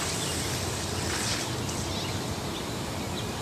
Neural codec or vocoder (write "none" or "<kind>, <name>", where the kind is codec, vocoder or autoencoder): none